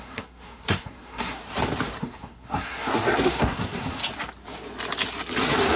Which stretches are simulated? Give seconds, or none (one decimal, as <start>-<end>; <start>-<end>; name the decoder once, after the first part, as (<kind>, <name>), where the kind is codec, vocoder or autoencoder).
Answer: 0.0-1.4 (codec, SNAC); 2.0-4.0